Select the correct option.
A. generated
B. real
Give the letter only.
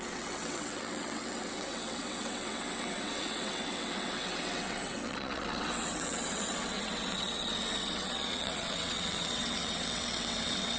A